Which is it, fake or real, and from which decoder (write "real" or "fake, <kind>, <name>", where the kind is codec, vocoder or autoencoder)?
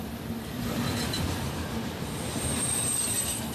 fake, vocoder, BigVGAN v2